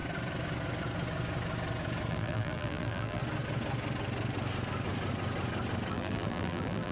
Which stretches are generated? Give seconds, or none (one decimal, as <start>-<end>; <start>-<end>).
2.1-3.2; 5.9-6.9